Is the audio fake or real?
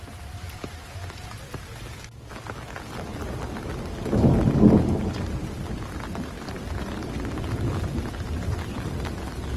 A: fake